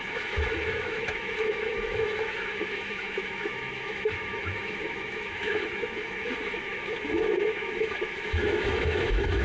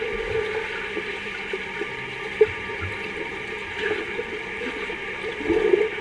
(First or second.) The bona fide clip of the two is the second